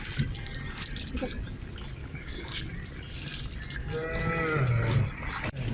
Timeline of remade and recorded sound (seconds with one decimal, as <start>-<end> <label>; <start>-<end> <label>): 0.0-2.0 recorded; 2.0-2.6 remade; 2.6-5.7 recorded